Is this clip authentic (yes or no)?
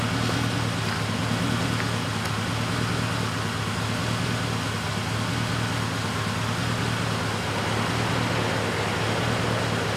yes